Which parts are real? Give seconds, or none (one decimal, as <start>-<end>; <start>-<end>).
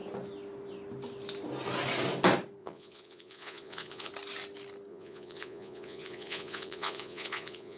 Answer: 0.0-2.6; 4.1-4.9